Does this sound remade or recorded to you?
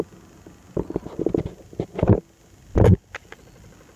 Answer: recorded